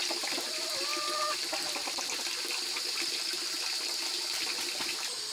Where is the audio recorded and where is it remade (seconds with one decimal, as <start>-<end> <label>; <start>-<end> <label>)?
0.0-5.3 recorded